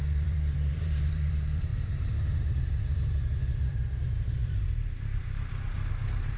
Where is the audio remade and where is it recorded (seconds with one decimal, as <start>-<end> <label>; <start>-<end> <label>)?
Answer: 0.0-1.7 remade; 1.7-4.0 recorded; 4.0-6.4 remade

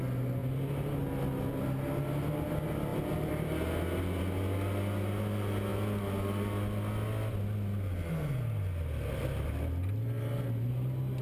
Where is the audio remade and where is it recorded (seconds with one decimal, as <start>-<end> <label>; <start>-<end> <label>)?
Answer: 0.0-11.2 recorded

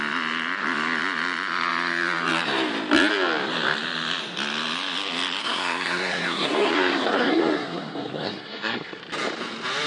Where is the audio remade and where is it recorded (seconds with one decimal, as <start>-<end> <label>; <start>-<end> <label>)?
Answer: 0.0-5.4 recorded; 5.4-9.0 remade; 9.0-9.9 recorded

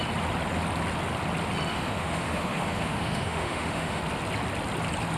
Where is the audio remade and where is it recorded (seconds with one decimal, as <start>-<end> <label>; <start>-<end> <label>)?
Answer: 0.0-1.7 recorded; 1.7-4.0 remade; 4.0-5.2 recorded

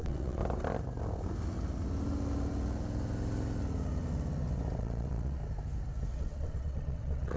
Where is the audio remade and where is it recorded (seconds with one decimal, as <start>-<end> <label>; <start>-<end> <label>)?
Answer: 0.0-0.4 remade; 0.4-4.8 recorded; 4.8-5.4 remade; 5.4-6.1 recorded; 6.1-7.4 remade

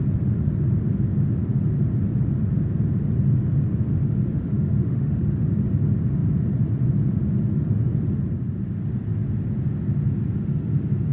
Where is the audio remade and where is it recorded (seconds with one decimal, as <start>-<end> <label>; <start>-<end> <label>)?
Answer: 0.0-4.0 recorded; 4.0-5.2 remade; 5.2-11.1 recorded

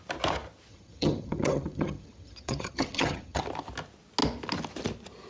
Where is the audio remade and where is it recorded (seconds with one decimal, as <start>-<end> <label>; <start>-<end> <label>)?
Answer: 0.0-0.7 recorded; 0.7-3.4 remade; 3.4-5.3 recorded

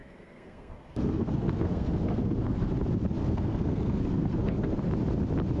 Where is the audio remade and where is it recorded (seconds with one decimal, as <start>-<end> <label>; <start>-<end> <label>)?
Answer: 0.0-2.7 remade; 2.7-3.2 recorded; 3.2-4.9 remade; 4.9-5.6 recorded